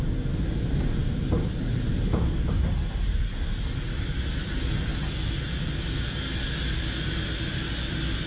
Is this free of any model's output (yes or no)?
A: yes